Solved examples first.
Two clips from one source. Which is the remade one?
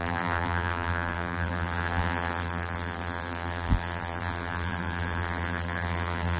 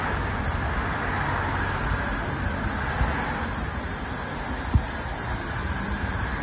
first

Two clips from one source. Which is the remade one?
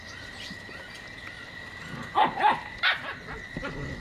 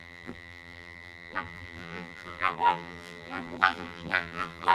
second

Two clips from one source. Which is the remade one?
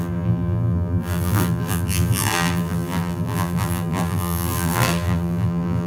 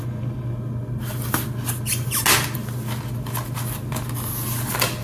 first